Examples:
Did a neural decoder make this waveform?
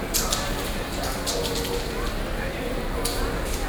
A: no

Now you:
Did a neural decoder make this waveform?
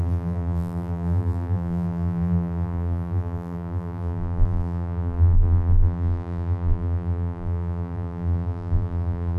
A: yes